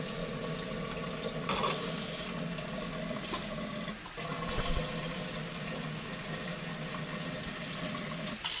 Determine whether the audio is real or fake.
real